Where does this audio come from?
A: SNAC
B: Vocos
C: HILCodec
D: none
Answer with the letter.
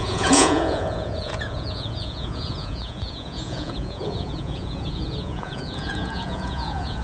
B